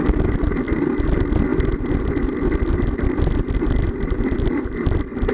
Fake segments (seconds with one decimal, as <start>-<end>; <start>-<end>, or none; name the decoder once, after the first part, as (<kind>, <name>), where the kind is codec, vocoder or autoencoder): none